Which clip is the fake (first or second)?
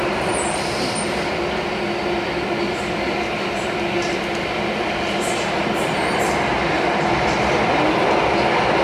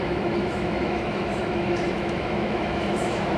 second